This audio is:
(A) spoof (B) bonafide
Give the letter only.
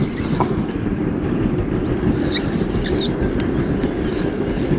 B